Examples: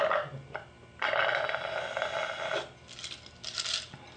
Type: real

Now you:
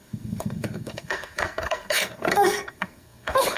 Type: fake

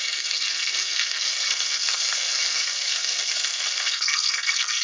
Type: fake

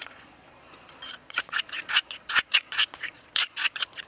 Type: fake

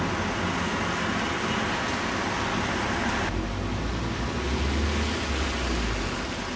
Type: real